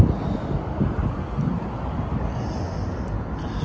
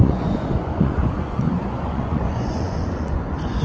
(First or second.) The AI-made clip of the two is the second